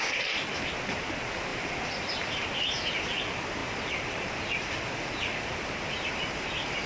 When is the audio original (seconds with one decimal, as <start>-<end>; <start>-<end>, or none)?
0.0-1.5; 3.2-3.6; 6.1-6.9